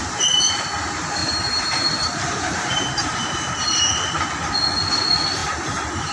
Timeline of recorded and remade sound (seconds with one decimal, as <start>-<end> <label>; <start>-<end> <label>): 0.0-1.2 recorded; 1.2-3.8 remade; 3.8-5.4 recorded; 5.4-6.1 remade